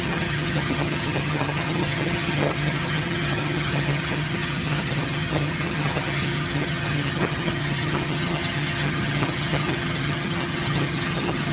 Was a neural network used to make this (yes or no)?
yes